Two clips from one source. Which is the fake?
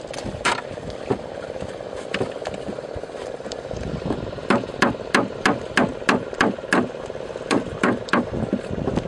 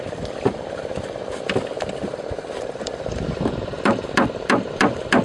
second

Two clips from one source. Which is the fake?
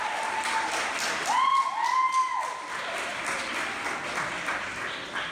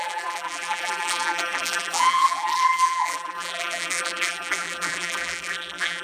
second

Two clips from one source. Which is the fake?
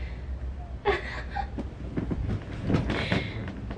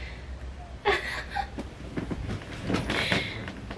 second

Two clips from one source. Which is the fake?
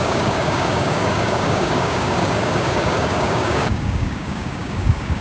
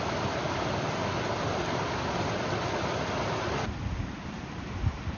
first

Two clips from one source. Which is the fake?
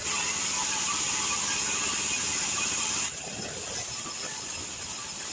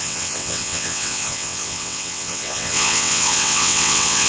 second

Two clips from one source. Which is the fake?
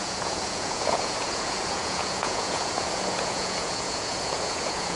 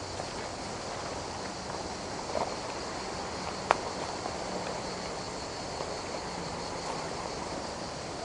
first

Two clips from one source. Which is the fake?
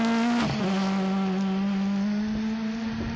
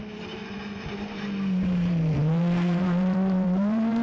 second